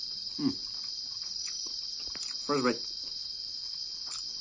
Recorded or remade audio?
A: recorded